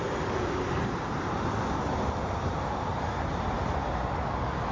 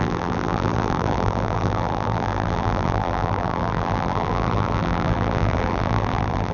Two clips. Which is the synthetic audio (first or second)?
second